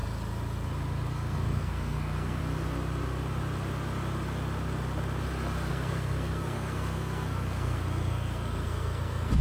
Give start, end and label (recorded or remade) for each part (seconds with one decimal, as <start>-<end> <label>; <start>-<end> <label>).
0.0-1.1 recorded; 1.1-2.4 remade; 2.4-5.7 recorded; 5.7-9.4 remade